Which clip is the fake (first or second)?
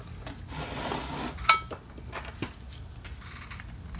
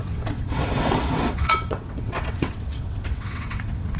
second